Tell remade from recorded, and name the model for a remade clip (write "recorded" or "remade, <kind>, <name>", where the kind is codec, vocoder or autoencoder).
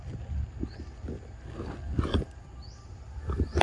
recorded